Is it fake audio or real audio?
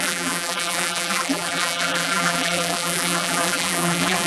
fake